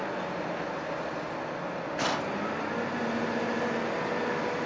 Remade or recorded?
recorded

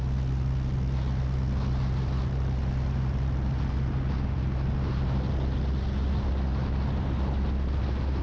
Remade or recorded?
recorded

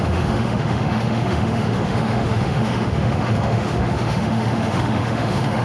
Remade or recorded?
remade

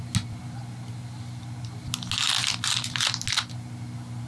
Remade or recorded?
recorded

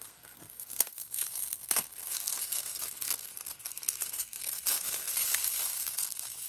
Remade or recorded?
remade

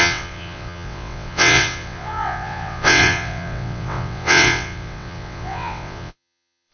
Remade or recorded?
remade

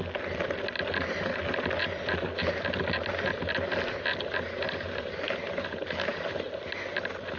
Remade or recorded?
recorded